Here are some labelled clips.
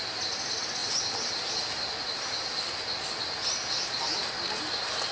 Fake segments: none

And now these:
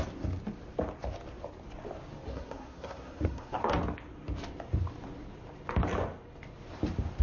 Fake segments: 2.3-3.6 (codec, SNAC)

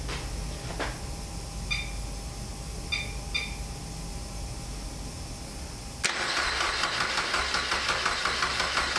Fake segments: none

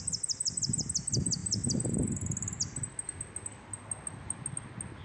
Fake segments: none

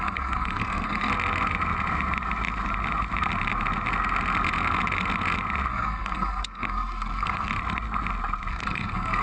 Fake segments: 0.0-1.1 (codec, SNAC); 5.7-7.5; 8.5-9.2

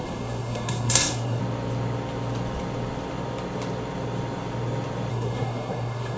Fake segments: 0.0-1.4 (codec, SNAC); 5.1-6.2